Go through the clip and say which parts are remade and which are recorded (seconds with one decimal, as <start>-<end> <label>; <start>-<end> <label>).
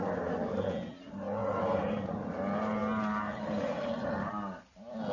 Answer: 0.0-1.4 recorded; 1.4-2.3 remade; 2.3-5.1 recorded